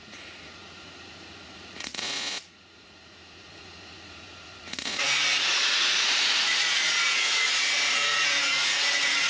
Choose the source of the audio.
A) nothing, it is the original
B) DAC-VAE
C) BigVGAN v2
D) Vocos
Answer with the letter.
D